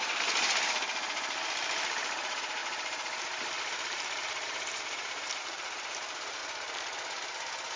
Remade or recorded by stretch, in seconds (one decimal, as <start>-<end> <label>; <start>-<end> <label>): 0.0-6.4 remade; 6.4-7.8 recorded

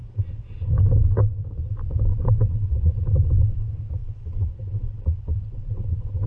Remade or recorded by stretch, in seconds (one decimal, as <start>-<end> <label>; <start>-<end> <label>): 0.0-0.7 remade; 0.7-2.1 recorded; 2.1-3.0 remade; 3.0-4.0 recorded; 4.0-6.3 remade

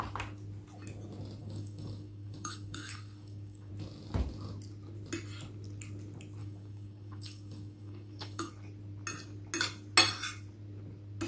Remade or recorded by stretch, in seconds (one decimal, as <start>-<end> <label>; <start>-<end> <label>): 0.0-1.4 recorded; 1.4-3.7 remade; 3.7-6.4 recorded; 6.4-8.5 remade; 8.5-11.3 recorded

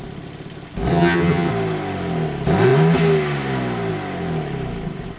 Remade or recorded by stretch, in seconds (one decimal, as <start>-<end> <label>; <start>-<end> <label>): 0.0-0.9 recorded; 0.9-1.5 remade; 1.5-5.2 recorded

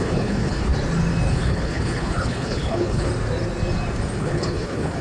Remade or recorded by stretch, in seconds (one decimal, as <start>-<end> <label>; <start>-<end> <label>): 0.0-0.7 remade; 0.7-1.3 recorded; 1.3-3.1 remade; 3.1-4.2 recorded; 4.2-5.0 remade

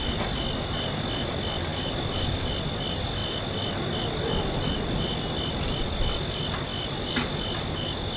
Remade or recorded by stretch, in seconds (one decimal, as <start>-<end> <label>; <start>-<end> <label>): 0.0-8.2 recorded

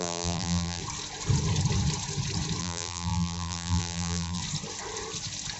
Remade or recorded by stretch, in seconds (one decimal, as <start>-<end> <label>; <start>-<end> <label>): 0.0-0.8 remade; 0.8-2.6 recorded; 2.6-4.4 remade; 4.4-5.6 recorded

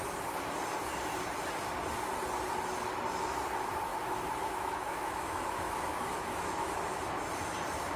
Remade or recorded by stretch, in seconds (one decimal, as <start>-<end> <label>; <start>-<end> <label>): 0.0-3.9 recorded; 3.9-7.1 remade; 7.1-8.0 recorded